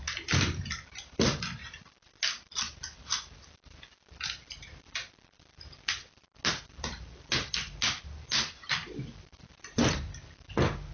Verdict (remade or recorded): recorded